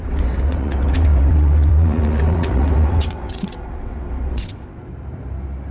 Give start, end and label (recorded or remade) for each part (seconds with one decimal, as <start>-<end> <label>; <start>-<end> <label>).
0.0-4.9 remade; 4.9-5.7 recorded